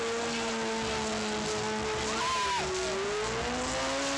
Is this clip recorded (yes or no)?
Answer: yes